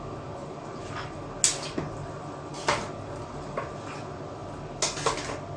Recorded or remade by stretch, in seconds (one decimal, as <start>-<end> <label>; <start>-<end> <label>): 0.0-5.6 recorded